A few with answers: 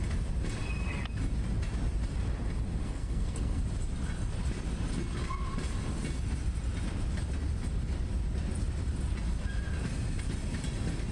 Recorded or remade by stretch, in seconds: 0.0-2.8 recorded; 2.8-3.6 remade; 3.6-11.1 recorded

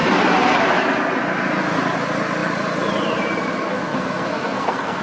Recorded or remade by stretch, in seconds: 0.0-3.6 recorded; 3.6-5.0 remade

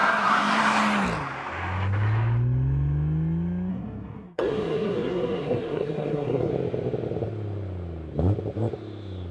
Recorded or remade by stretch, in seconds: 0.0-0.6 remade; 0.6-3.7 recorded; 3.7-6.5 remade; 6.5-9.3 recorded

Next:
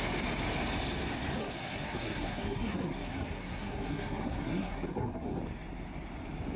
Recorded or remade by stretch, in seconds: 0.0-1.4 recorded; 1.4-5.4 remade; 5.4-6.6 recorded

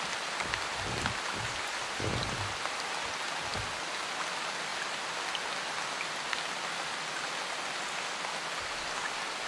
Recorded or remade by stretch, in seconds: 0.0-9.5 recorded

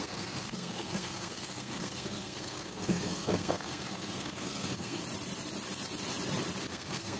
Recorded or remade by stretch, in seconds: 0.0-5.0 remade; 5.0-6.7 recorded; 6.7-7.2 remade

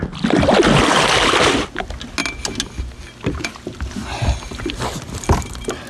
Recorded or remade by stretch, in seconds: 0.0-5.9 recorded

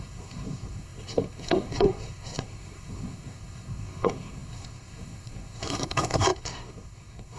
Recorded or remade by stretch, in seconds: 0.0-7.4 remade